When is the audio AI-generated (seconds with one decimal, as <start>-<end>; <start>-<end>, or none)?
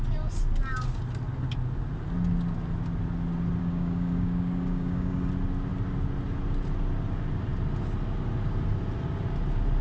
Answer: 3.6-5.3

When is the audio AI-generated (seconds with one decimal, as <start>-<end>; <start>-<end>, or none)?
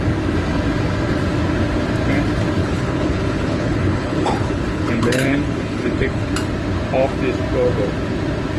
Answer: 2.6-6.3